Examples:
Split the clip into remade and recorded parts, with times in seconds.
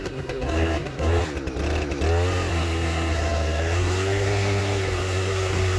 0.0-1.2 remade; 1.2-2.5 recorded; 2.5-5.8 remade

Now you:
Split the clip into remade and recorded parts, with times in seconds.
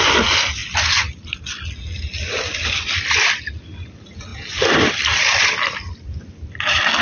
0.0-7.0 recorded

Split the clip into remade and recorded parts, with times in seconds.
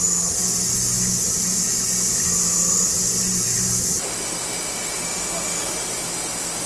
0.0-6.7 recorded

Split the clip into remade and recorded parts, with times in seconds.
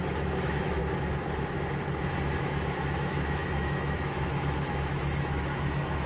0.0-0.8 remade; 0.8-2.4 recorded; 2.4-6.1 remade